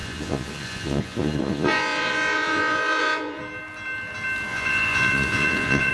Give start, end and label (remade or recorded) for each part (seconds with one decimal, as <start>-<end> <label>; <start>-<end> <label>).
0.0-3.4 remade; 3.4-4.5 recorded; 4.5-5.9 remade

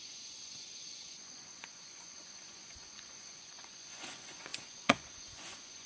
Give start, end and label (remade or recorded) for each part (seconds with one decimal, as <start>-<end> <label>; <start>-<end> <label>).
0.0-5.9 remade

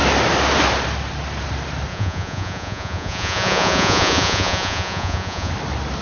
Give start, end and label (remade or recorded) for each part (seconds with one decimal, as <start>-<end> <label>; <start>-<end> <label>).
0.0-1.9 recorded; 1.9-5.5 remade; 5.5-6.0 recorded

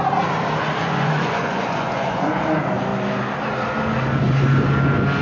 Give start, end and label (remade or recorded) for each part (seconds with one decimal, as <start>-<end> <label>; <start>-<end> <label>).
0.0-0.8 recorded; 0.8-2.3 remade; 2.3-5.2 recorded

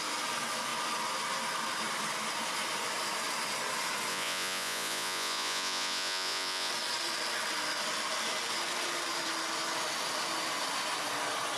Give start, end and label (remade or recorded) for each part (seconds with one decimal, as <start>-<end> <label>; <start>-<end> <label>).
0.0-4.1 recorded; 4.1-6.7 remade; 6.7-11.6 recorded

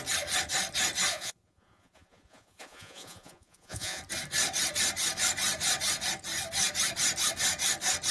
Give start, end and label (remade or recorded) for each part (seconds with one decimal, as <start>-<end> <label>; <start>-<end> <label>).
0.0-1.1 recorded; 1.1-4.0 remade; 4.0-8.1 recorded

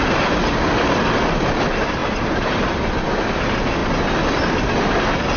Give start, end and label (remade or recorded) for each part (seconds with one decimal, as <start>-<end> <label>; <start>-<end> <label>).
0.0-5.4 recorded